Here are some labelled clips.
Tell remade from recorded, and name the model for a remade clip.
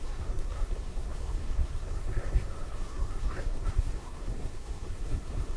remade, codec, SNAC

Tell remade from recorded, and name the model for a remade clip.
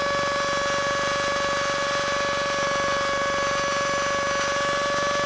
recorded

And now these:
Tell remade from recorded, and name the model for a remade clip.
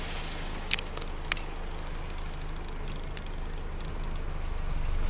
recorded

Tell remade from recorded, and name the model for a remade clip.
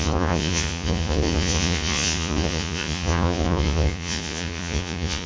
remade, vocoder, Vocos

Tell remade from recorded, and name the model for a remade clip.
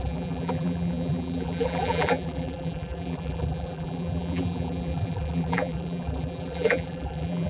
remade, vocoder, BigVGAN v2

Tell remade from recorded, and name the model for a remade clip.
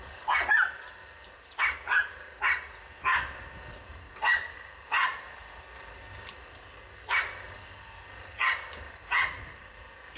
recorded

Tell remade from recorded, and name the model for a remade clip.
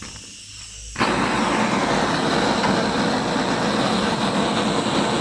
recorded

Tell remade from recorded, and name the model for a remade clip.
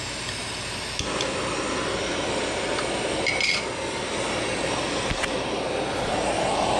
recorded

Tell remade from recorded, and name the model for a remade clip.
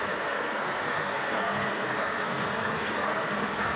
remade, codec, SNAC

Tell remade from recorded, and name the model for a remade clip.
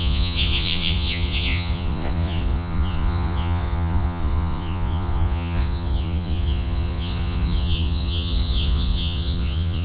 remade, vocoder, Vocos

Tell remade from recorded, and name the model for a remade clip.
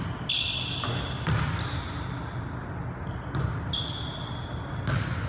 recorded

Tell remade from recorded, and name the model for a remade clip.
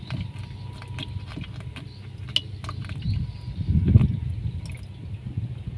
recorded